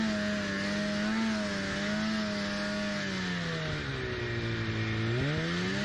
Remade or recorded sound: recorded